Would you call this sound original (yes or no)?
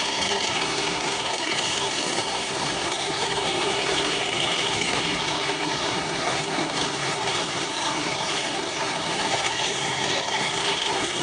no